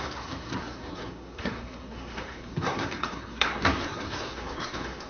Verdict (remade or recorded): remade